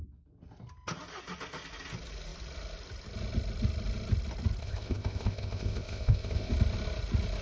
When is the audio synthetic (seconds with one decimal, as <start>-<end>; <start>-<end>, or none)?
4.6-6.5